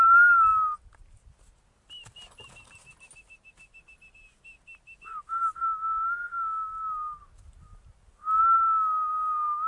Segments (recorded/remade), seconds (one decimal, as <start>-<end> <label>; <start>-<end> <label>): 0.0-9.7 recorded